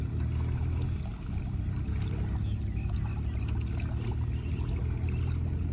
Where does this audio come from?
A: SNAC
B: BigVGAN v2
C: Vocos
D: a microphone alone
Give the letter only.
D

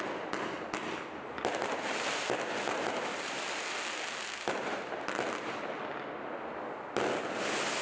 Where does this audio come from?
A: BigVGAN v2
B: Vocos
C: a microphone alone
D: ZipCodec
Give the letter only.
C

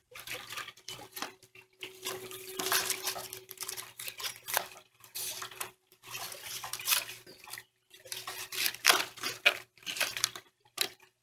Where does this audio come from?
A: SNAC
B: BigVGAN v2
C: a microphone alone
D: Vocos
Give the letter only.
B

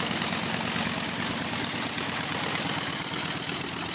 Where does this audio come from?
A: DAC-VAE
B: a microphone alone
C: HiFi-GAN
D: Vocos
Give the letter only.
B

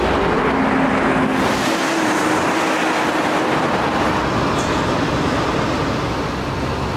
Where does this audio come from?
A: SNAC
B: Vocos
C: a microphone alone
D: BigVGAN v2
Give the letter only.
C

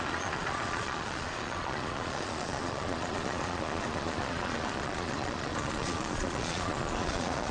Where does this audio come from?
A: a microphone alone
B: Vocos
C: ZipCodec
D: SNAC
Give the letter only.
B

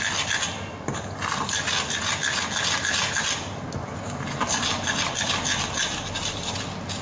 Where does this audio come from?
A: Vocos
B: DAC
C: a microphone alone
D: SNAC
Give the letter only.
C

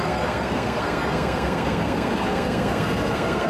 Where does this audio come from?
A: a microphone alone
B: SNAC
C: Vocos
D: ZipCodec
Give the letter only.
B